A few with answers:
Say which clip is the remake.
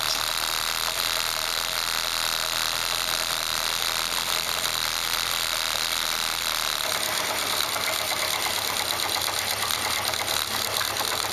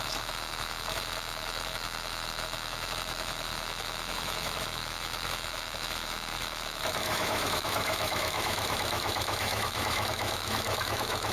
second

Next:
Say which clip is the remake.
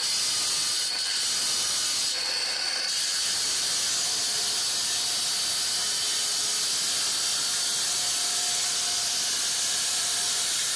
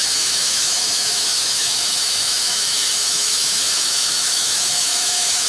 second